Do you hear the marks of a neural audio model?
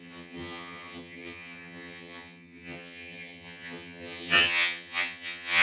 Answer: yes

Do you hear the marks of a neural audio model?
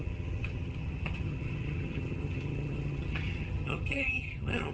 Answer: yes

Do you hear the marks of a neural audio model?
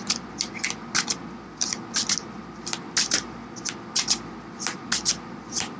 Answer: no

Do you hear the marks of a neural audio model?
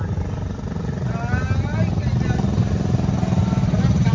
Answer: no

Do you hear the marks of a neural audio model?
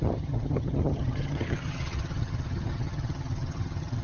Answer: yes